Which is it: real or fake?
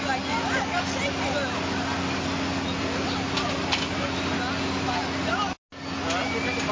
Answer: real